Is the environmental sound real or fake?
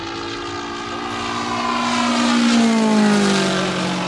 real